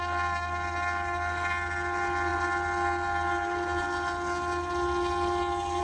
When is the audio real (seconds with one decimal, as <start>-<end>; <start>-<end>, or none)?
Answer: 0.0-5.8

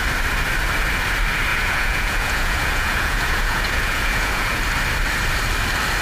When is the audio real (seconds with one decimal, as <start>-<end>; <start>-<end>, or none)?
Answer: 0.0-1.5; 4.6-6.0

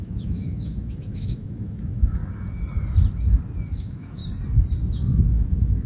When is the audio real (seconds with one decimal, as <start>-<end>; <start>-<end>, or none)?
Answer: 2.2-3.7; 4.2-4.9

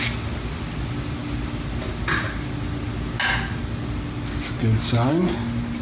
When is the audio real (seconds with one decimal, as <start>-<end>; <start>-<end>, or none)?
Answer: 0.0-5.8